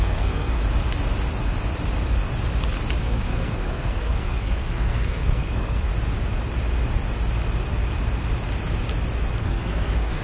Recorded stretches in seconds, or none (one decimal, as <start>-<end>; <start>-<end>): 0.6-3.0; 5.9-9.4